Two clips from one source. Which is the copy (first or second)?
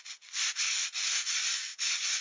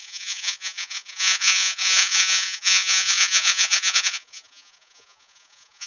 second